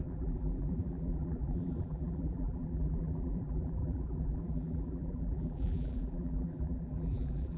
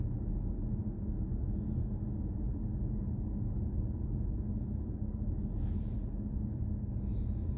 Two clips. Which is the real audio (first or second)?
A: second